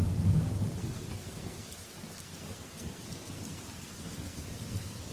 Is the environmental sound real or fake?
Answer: fake